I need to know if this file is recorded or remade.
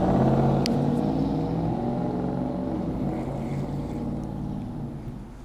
recorded